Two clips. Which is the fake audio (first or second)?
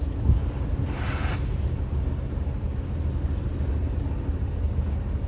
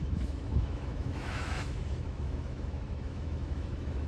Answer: second